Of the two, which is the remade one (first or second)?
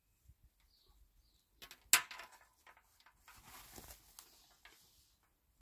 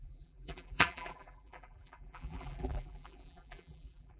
second